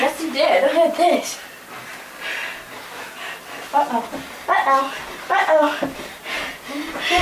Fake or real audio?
real